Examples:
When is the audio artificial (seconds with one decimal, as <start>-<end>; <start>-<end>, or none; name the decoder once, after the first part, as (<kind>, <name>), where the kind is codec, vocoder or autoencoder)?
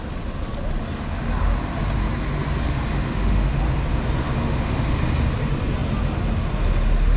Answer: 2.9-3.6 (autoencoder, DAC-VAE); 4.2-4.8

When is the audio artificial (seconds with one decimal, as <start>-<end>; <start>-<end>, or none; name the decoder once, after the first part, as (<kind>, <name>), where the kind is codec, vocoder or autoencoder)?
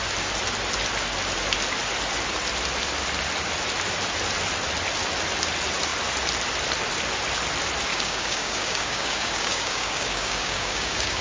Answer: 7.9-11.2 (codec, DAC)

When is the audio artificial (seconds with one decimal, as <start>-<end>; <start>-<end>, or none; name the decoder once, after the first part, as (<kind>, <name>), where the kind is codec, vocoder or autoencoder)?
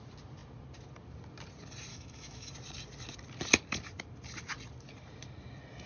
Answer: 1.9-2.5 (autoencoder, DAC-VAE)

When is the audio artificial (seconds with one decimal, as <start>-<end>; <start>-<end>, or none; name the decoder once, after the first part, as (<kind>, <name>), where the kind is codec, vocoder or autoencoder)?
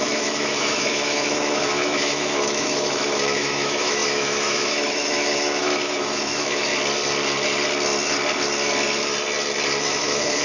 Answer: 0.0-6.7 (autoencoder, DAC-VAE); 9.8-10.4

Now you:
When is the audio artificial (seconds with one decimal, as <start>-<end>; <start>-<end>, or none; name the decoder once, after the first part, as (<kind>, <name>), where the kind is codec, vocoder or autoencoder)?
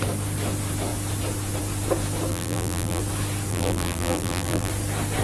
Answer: 2.3-3.0 (vocoder, BigVGAN v2); 3.5-4.7